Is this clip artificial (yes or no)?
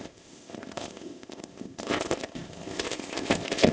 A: yes